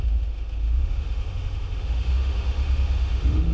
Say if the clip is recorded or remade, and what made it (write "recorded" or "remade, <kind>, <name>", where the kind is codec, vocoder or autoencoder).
remade, autoencoder, DAC-VAE